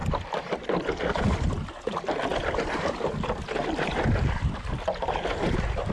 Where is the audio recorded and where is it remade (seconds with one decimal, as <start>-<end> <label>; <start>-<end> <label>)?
0.0-5.9 recorded